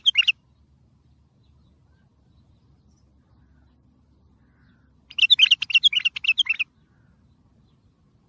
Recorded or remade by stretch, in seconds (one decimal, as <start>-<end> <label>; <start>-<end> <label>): 0.0-8.3 recorded